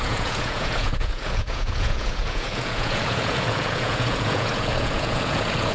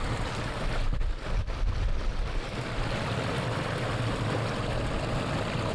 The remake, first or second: first